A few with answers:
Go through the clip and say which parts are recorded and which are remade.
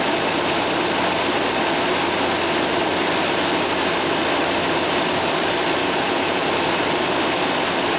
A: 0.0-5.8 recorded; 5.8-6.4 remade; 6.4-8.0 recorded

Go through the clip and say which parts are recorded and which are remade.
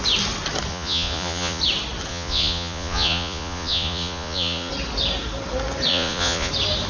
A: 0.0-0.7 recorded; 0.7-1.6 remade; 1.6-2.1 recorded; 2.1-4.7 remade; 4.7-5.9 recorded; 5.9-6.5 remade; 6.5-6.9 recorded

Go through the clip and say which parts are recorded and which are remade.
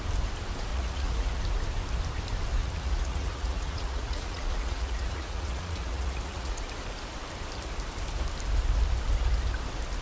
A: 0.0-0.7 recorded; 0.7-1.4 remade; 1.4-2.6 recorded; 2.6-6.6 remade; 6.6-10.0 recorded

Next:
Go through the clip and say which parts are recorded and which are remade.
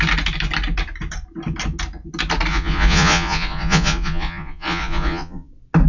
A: 0.0-2.5 recorded; 2.5-5.5 remade; 5.5-5.9 recorded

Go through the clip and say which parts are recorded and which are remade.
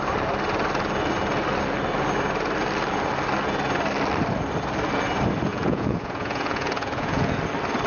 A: 0.0-5.5 recorded; 5.5-7.4 remade; 7.4-7.9 recorded